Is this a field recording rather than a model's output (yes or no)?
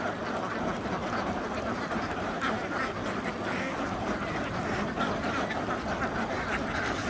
yes